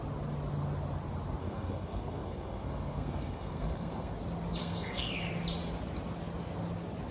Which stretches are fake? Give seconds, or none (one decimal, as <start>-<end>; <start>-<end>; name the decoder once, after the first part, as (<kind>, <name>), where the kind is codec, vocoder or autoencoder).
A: 1.4-4.1 (codec, SNAC); 4.6-5.3